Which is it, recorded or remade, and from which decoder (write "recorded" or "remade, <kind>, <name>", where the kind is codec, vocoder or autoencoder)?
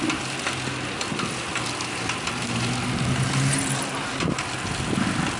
recorded